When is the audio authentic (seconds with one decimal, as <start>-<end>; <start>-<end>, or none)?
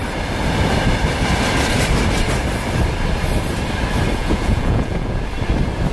0.0-4.2; 5.2-5.9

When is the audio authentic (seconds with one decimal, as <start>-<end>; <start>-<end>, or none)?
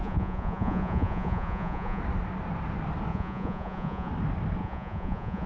2.0-3.1; 4.1-4.6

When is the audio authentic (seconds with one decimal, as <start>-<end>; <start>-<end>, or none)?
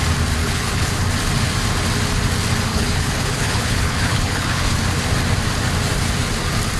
0.0-0.4; 0.9-2.7; 4.8-6.8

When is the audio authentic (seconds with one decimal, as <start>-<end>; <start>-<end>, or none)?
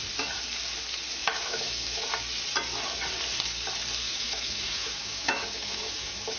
0.0-1.2; 2.0-4.0